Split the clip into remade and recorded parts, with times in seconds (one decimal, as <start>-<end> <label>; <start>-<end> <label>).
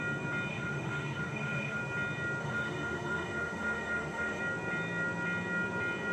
0.0-0.5 recorded; 0.5-1.8 remade; 1.8-2.4 recorded; 2.4-4.4 remade; 4.4-6.1 recorded